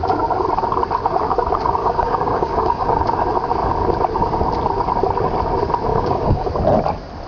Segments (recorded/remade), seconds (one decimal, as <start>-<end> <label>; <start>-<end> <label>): 0.0-1.8 recorded; 1.8-3.0 remade; 3.0-5.9 recorded; 5.9-6.5 remade; 6.5-7.3 recorded